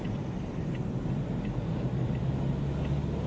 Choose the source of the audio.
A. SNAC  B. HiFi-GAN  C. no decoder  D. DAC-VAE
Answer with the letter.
C